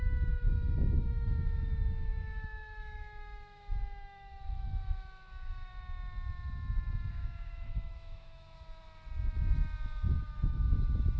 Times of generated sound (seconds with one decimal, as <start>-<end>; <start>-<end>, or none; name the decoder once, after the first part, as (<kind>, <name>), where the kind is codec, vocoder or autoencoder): 0.0-5.7 (autoencoder, DAC-VAE); 7.1-8.8; 10.2-11.2

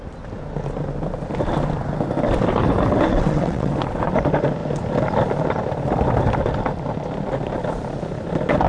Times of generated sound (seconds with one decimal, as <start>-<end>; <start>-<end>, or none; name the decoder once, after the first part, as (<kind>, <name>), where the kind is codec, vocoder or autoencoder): 3.1-3.7 (vocoder, WaveNeXt)

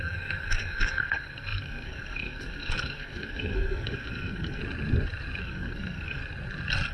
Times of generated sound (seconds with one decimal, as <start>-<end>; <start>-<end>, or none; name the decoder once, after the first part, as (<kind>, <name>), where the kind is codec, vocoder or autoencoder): 0.0-4.6 (codec, SNAC); 5.4-6.2